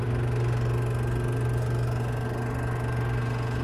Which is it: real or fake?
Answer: real